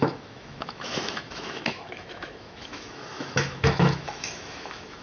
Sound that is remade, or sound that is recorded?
remade